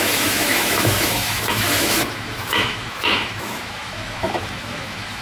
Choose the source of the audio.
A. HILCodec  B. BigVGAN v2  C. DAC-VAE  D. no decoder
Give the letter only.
C